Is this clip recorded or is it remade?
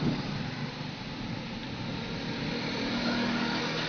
recorded